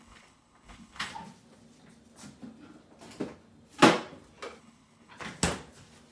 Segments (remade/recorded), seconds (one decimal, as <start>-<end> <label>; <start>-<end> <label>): 0.0-1.1 remade; 1.1-4.6 recorded; 4.6-5.1 remade; 5.1-6.1 recorded